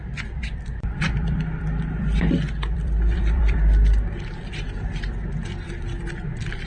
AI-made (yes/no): yes